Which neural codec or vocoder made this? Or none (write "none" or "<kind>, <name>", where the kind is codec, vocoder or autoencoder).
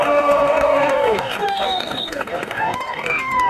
codec, DAC